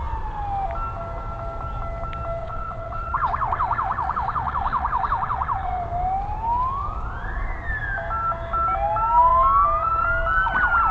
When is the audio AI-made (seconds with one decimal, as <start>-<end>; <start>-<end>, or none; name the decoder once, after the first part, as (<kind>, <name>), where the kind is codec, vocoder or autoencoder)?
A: 2.4-5.8 (vocoder, WaveNeXt)